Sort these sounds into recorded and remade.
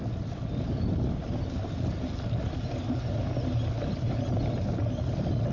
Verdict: recorded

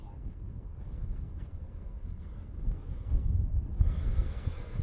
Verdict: remade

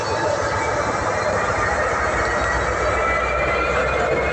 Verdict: recorded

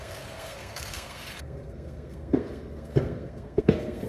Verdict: remade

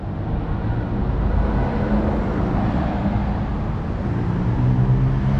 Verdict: recorded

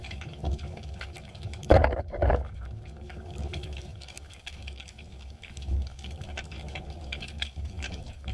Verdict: remade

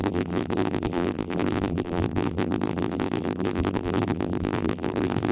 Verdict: remade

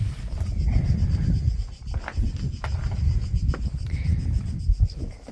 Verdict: recorded